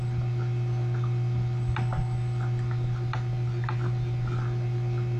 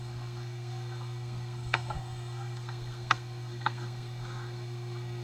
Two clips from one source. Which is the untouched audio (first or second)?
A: first